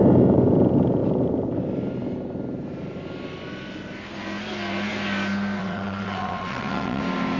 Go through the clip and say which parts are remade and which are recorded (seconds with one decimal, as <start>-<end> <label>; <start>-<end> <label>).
0.0-5.6 recorded; 5.6-7.0 remade; 7.0-7.4 recorded